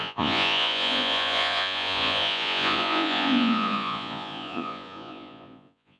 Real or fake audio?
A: fake